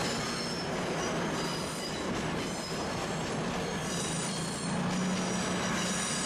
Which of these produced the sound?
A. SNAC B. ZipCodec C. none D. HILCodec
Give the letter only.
C